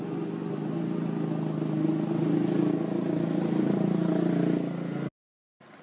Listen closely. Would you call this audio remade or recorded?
recorded